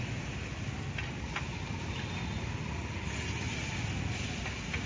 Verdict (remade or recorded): recorded